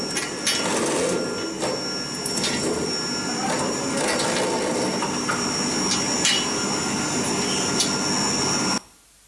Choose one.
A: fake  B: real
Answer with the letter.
B